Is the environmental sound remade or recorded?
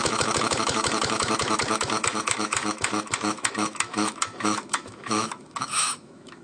remade